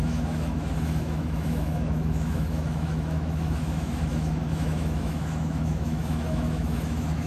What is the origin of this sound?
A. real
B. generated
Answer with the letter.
B